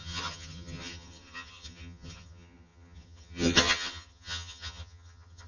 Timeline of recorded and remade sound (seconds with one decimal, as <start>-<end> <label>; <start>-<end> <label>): 0.0-5.5 remade